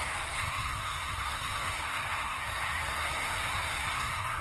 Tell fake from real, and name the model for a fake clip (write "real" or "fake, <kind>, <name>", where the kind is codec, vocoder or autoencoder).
fake, codec, SNAC